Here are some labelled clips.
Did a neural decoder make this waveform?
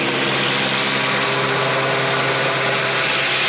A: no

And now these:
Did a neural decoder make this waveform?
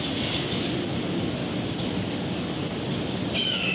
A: no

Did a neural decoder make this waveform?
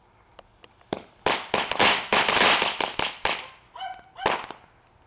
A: no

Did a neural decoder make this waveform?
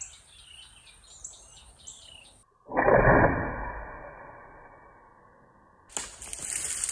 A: no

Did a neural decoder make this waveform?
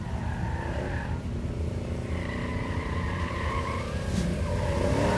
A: yes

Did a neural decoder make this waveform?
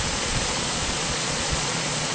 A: yes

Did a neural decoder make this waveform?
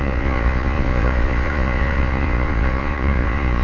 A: yes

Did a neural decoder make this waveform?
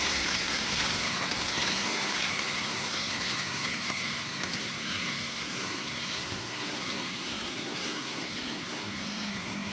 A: yes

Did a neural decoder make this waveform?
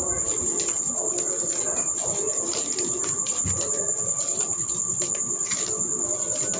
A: no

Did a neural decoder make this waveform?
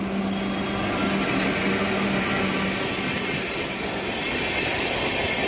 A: no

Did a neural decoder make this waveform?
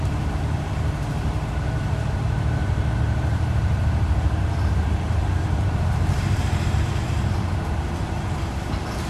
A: yes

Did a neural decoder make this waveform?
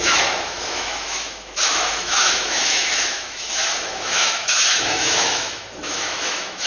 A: yes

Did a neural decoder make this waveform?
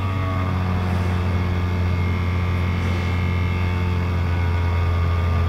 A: no